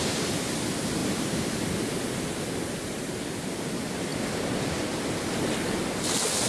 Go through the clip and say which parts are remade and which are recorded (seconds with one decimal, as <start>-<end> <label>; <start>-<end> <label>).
0.0-6.5 recorded